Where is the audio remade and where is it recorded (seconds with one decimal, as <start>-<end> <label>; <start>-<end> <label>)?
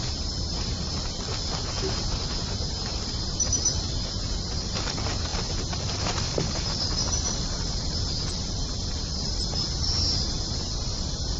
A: 0.0-11.4 recorded